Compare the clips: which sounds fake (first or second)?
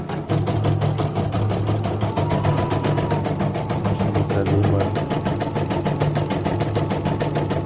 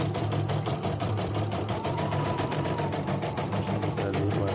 second